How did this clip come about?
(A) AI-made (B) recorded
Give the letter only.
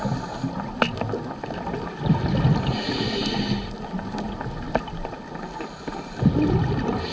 B